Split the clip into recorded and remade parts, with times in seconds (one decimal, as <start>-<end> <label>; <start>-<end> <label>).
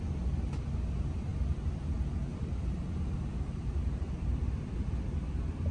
0.0-1.3 recorded; 1.3-1.8 remade; 1.8-2.3 recorded; 2.3-2.8 remade; 2.8-3.3 recorded; 3.3-5.7 remade